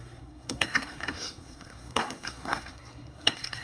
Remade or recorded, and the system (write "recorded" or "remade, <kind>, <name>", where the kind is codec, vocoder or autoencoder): remade, codec, SNAC